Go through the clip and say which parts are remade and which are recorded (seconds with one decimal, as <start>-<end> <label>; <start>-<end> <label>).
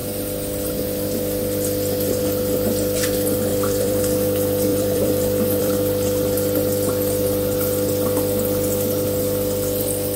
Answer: 0.0-3.5 recorded; 3.5-4.0 remade; 4.0-4.7 recorded; 4.7-5.7 remade; 5.7-10.2 recorded